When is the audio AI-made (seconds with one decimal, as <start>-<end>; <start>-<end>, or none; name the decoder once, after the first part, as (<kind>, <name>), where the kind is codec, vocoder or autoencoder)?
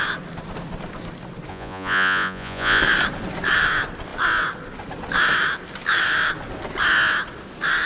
1.5-2.8 (vocoder, Vocos)